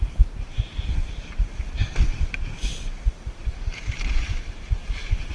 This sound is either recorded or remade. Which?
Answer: remade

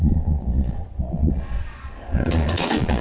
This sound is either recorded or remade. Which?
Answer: remade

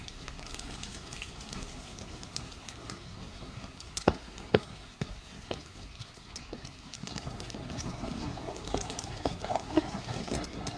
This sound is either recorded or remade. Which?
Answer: remade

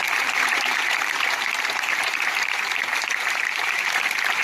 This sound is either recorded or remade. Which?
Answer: remade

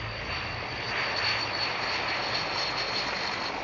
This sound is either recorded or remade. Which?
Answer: recorded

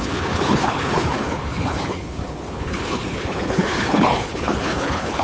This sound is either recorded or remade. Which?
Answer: remade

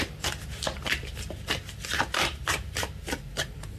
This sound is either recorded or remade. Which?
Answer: recorded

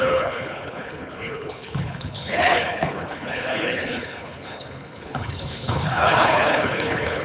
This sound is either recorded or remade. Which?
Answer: remade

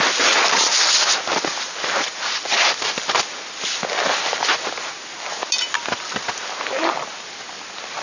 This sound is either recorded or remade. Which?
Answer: recorded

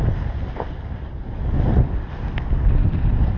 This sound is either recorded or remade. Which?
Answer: recorded